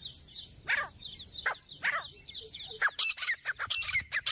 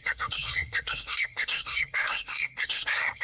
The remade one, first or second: second